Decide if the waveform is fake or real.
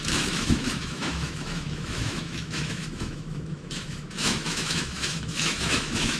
fake